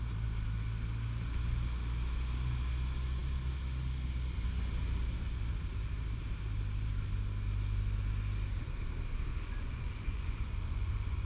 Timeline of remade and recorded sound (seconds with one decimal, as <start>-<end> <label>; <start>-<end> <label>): 0.0-9.3 recorded; 9.3-11.3 remade